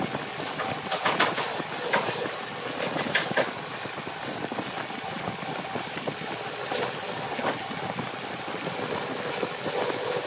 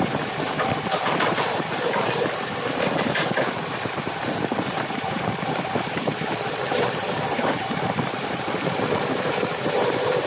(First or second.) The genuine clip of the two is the first